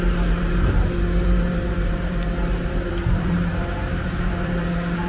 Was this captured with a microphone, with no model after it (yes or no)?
no